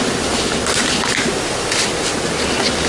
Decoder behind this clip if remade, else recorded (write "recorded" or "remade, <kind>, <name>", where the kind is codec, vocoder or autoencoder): recorded